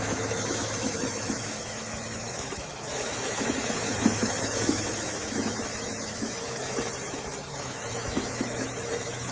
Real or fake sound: fake